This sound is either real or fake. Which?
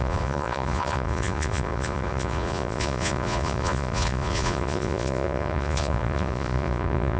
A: fake